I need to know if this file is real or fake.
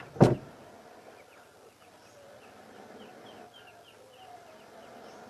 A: real